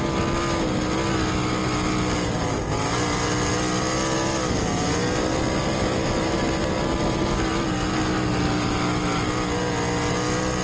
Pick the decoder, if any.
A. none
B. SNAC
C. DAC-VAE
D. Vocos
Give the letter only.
A